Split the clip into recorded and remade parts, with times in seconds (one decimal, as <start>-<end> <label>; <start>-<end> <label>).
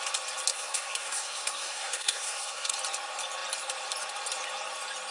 0.0-0.5 recorded; 0.5-2.7 remade; 2.7-5.1 recorded